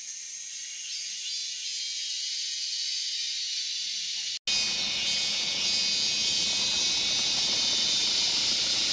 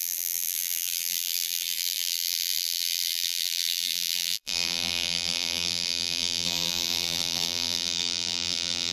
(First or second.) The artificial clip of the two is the second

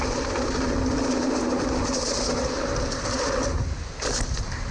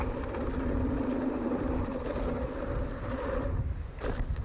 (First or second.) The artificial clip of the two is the second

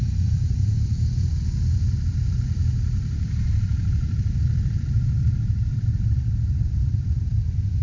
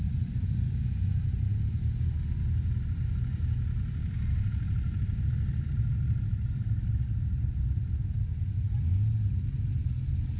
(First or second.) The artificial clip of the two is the first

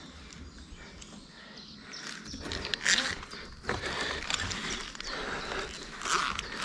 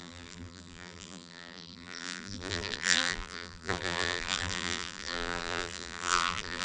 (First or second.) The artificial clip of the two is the second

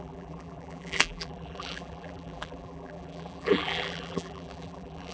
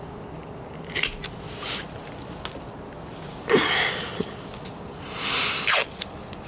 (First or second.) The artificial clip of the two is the first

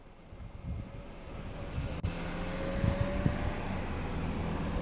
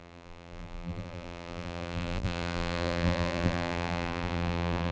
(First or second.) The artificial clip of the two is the second